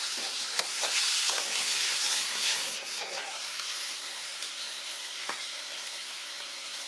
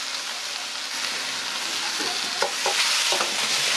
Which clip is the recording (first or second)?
second